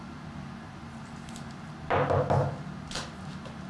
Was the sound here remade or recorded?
recorded